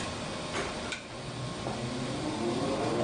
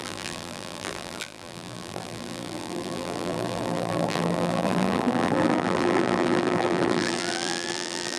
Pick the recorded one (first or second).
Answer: first